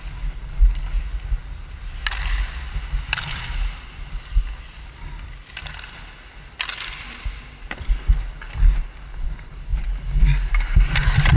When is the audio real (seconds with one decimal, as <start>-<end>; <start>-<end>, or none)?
0.0-11.4